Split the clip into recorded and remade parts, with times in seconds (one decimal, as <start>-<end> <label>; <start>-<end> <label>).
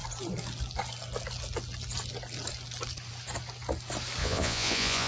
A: 0.0-4.2 recorded; 4.2-5.1 remade